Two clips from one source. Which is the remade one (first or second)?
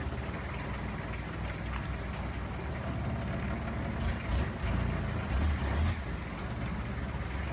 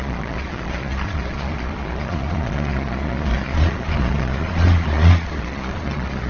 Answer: second